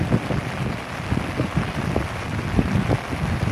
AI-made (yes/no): no